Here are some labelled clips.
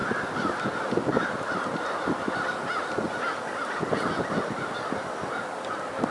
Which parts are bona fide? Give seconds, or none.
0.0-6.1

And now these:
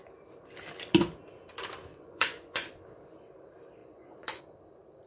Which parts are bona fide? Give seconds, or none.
0.0-1.9; 2.7-3.8; 4.4-5.1

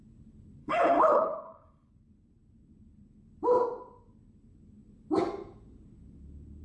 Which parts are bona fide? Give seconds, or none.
0.0-0.6; 1.9-6.6

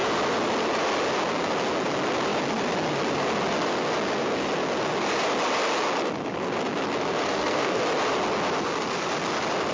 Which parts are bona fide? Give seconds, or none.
0.0-7.3; 7.8-9.7

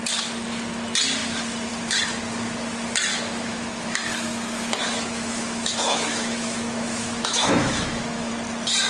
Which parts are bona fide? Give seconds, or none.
0.0-3.1; 8.3-8.9